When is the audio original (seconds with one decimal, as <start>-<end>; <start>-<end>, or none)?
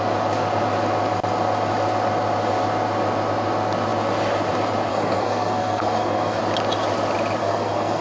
0.0-4.9; 6.4-7.4